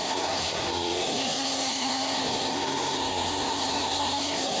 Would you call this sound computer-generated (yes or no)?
yes